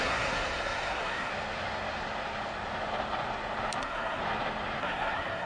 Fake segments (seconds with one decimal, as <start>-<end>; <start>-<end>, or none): 0.0-1.3; 3.8-4.2; 4.8-5.5